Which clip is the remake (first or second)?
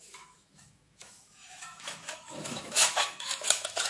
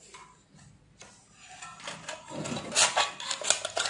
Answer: first